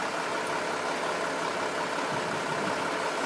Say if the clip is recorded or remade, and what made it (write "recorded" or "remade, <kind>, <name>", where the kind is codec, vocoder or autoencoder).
recorded